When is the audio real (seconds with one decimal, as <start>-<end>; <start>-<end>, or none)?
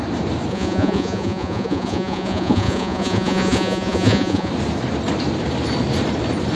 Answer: 0.0-0.5; 4.5-6.6